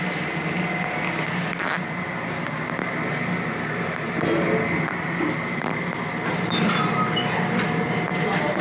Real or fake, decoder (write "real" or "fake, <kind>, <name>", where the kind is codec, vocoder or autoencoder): real